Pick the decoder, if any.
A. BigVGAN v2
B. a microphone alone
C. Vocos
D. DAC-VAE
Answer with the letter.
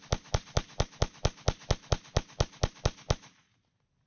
B